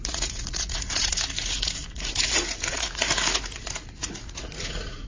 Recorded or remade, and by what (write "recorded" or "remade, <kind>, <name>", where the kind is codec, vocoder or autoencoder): remade, vocoder, Vocos